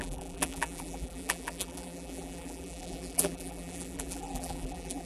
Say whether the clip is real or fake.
fake